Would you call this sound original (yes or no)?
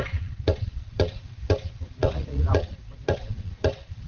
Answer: no